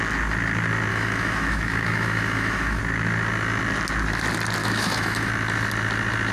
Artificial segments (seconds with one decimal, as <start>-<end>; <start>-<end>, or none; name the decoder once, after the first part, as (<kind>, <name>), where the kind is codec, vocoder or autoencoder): 0.9-2.8 (autoencoder, DAC-VAE); 4.6-5.3